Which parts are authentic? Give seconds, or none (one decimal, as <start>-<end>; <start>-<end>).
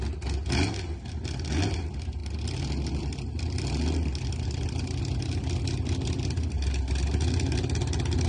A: 0.0-8.3